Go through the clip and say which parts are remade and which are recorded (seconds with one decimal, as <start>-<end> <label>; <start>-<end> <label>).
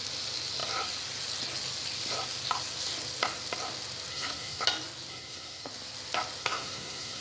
0.0-4.1 recorded; 4.1-4.6 remade; 4.6-5.1 recorded; 5.1-5.7 remade; 5.7-6.4 recorded; 6.4-7.2 remade